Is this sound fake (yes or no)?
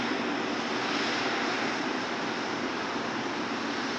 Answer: no